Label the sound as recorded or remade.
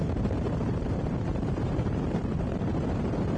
remade